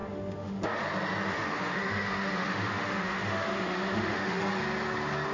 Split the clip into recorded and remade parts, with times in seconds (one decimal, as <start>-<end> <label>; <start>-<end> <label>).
0.0-0.8 remade; 0.8-1.3 recorded; 1.3-4.4 remade; 4.4-5.3 recorded